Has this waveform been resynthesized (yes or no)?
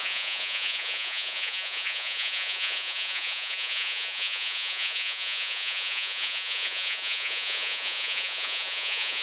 yes